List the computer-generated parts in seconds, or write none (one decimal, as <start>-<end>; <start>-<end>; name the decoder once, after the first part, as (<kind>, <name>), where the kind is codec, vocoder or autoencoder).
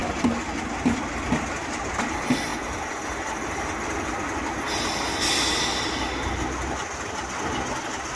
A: none